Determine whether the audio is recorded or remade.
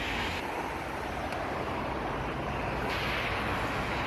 recorded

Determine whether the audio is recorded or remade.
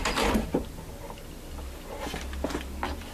recorded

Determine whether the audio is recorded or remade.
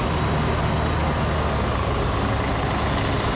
recorded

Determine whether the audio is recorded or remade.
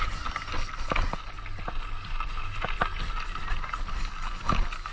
recorded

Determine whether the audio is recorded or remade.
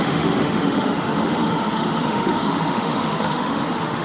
remade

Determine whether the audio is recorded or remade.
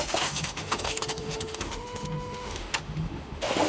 remade